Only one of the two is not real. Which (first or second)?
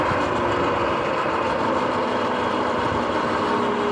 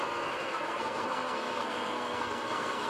second